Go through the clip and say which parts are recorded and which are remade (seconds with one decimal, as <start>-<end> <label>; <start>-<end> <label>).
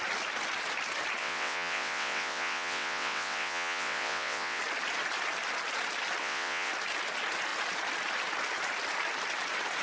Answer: 0.0-1.2 recorded; 1.2-4.6 remade; 4.6-6.2 recorded; 6.2-6.7 remade; 6.7-9.8 recorded